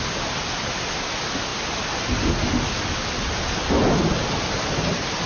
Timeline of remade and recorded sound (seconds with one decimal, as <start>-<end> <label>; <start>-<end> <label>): 0.0-5.3 recorded